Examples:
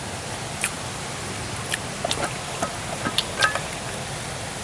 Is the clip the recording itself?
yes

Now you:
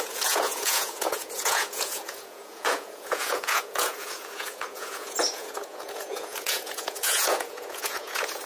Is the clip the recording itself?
no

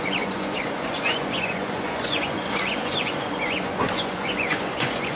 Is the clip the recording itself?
no